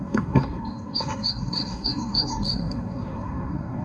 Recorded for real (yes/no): no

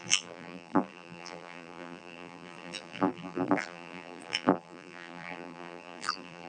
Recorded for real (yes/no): no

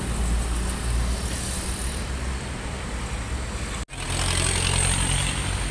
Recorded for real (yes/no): yes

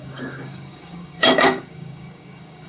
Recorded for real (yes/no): no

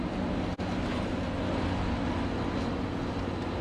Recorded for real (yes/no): yes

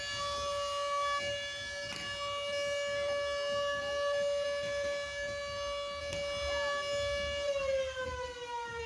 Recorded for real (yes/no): yes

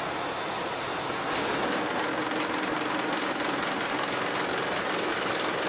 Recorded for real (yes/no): yes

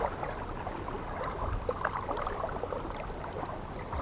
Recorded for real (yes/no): yes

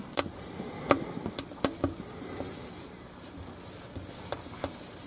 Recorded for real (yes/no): yes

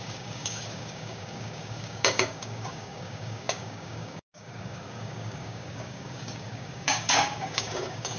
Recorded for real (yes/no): no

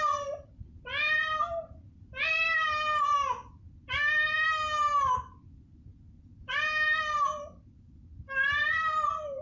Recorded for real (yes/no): yes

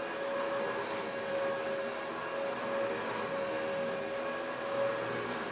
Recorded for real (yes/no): yes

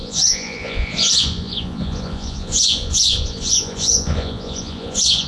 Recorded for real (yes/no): no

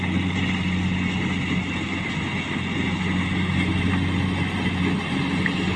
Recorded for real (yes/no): yes